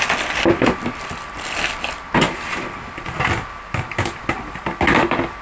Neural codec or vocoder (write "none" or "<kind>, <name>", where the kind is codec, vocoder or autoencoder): none